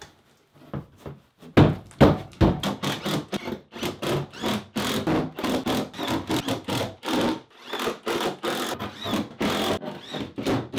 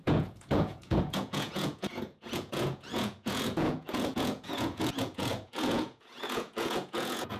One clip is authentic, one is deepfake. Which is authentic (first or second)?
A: first